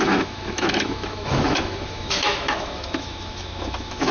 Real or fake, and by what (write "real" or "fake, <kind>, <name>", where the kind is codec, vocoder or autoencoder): fake, autoencoder, DAC-VAE